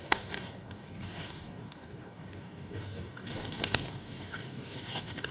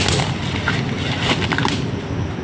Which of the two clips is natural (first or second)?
second